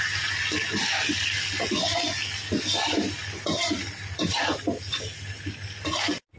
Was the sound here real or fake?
real